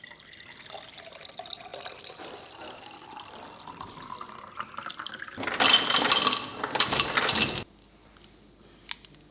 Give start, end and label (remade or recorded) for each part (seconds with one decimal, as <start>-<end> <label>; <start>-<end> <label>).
0.0-9.3 recorded